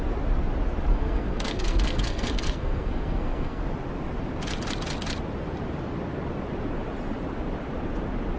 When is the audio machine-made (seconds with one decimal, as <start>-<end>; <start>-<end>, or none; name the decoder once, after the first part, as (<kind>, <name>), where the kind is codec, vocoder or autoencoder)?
0.9-3.6 (codec, SNAC)